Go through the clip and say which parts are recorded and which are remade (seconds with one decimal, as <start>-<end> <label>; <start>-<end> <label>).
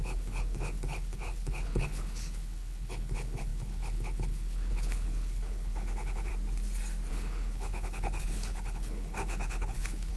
0.0-6.3 remade; 6.3-7.1 recorded; 7.1-10.2 remade